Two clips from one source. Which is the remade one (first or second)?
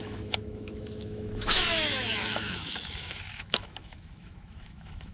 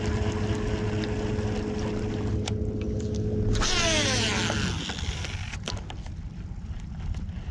first